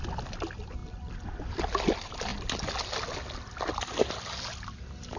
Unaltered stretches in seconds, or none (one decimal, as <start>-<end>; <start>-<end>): 0.0-5.2